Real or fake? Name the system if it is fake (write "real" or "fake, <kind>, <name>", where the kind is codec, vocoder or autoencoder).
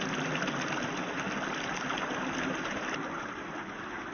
real